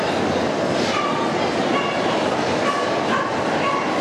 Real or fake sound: real